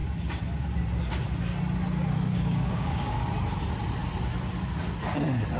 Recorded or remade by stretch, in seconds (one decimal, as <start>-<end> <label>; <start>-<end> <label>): 0.0-2.3 recorded; 2.3-3.3 remade; 3.3-5.6 recorded